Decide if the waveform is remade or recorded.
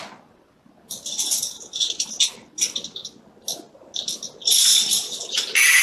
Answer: recorded